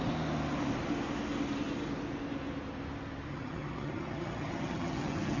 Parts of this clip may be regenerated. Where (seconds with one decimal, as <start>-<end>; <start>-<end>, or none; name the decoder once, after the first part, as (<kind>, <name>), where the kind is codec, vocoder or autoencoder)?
3.3-5.4 (vocoder, HiFi-GAN)